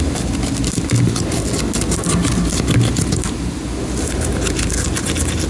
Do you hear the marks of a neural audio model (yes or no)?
no